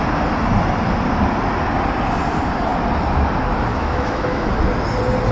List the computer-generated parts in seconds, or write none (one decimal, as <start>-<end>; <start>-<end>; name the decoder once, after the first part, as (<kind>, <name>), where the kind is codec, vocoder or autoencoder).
3.7-4.5 (autoencoder, DAC-VAE)